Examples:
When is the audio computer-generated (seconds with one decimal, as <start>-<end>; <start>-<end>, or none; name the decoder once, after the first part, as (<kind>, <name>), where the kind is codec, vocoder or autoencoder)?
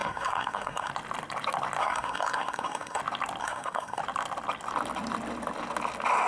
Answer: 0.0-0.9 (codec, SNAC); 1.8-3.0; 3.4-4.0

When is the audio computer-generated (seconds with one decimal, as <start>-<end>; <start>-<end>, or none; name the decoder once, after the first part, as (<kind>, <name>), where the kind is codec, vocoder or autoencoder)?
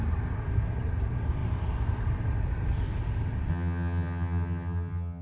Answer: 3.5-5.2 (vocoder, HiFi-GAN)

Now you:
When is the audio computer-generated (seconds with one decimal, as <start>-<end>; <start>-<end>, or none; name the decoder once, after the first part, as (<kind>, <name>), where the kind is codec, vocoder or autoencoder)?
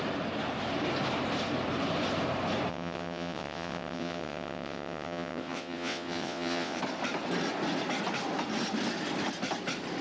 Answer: 2.7-6.8 (vocoder, WaveNeXt)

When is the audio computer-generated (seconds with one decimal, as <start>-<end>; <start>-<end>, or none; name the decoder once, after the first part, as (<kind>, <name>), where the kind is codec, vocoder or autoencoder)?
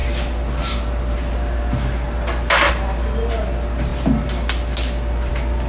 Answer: none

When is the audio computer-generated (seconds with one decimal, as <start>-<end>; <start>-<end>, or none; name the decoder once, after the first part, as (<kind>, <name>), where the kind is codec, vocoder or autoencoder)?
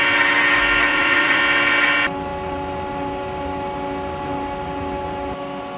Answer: 0.9-1.4 (vocoder, Vocos)